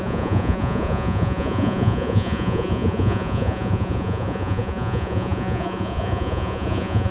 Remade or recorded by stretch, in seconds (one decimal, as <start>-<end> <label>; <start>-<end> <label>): 0.0-7.1 remade